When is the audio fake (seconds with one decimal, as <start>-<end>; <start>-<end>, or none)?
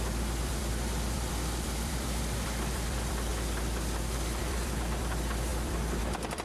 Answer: 0.0-3.3; 4.4-6.4